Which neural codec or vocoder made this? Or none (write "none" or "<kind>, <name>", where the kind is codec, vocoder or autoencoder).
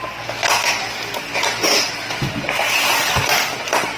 none